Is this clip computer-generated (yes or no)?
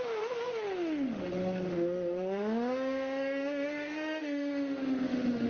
yes